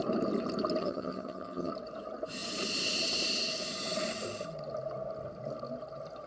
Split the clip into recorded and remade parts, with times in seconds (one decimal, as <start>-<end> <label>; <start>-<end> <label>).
0.0-0.8 recorded; 0.8-1.7 remade; 1.7-6.3 recorded

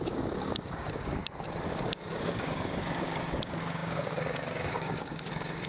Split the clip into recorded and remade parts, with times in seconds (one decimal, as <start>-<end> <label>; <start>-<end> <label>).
0.0-1.2 remade; 1.2-1.7 recorded; 1.7-5.7 remade

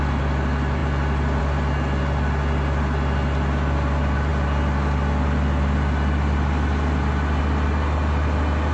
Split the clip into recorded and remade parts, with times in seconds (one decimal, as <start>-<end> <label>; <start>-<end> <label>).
0.0-8.7 recorded

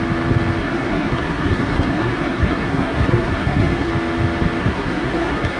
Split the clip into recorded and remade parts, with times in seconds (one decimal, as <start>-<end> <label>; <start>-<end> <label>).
0.0-0.6 recorded; 0.6-3.9 remade; 3.9-4.6 recorded; 4.6-5.6 remade

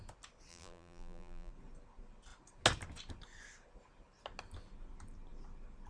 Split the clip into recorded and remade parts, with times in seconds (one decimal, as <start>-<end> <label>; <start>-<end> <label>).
0.0-0.5 recorded; 0.5-1.5 remade; 1.5-5.9 recorded